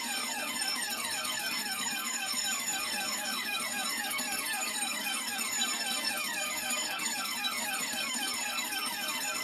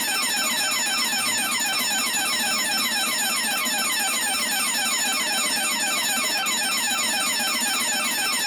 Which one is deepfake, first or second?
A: first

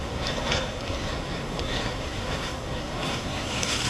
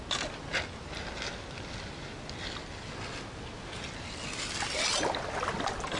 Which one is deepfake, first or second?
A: first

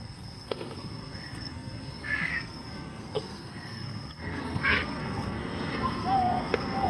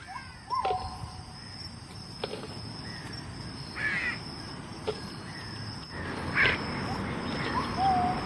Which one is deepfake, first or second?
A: first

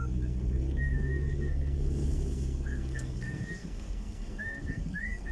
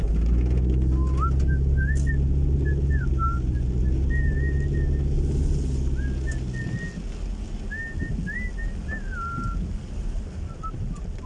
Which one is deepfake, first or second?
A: first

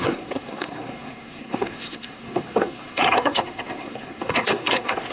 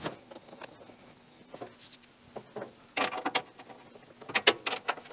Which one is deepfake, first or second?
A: first